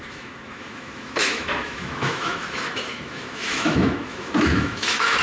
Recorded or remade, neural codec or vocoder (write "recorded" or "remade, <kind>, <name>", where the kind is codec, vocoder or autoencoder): remade, autoencoder, DAC-VAE